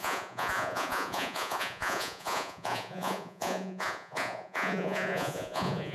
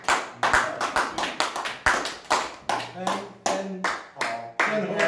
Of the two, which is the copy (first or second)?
first